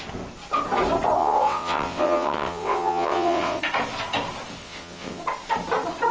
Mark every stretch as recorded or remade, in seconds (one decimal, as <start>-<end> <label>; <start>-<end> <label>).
0.0-1.2 recorded; 1.2-3.6 remade; 3.6-4.6 recorded; 4.6-5.2 remade; 5.2-6.1 recorded

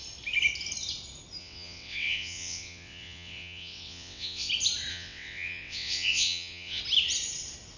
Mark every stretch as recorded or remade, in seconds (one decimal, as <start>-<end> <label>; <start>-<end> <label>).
0.0-1.4 recorded; 1.4-4.5 remade; 4.5-4.9 recorded; 4.9-6.8 remade; 6.8-7.8 recorded

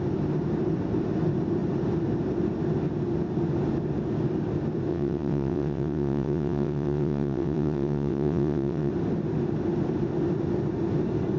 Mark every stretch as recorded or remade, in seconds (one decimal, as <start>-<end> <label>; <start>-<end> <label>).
0.0-4.9 recorded; 4.9-8.9 remade; 8.9-11.4 recorded

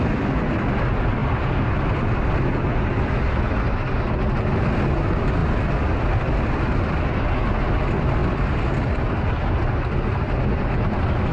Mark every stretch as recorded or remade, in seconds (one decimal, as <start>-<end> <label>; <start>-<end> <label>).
0.0-11.3 recorded

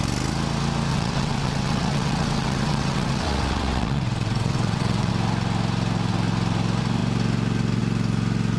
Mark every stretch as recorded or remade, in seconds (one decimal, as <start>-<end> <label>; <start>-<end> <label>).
0.0-0.9 recorded; 0.9-5.1 remade; 5.1-8.6 recorded

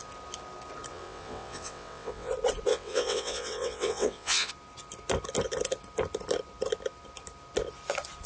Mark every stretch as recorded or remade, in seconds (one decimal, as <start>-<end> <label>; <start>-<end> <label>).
0.0-0.9 recorded; 0.9-2.3 remade; 2.3-2.7 recorded; 2.7-4.5 remade; 4.5-8.3 recorded

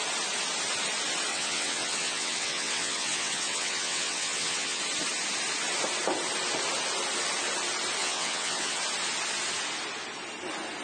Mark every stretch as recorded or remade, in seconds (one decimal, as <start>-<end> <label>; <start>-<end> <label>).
0.0-1.3 recorded; 1.3-4.8 remade; 4.8-8.0 recorded; 8.0-8.8 remade; 8.8-10.8 recorded